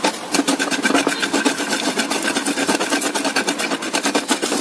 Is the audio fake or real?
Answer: real